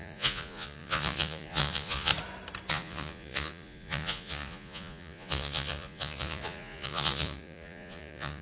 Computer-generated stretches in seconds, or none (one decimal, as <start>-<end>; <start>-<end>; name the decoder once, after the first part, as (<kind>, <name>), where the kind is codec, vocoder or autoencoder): 0.0-2.1 (vocoder, Vocos); 2.7-8.4